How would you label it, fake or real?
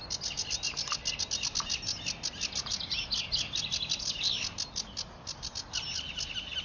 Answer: real